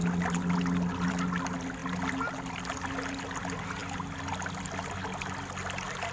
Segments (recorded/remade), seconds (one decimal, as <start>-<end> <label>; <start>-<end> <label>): 0.0-6.1 recorded